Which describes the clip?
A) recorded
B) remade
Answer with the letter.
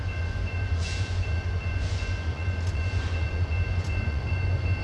B